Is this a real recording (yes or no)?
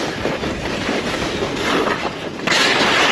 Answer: yes